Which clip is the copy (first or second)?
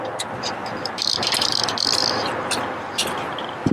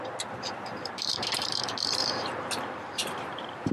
second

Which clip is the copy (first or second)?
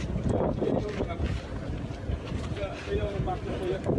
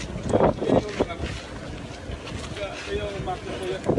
first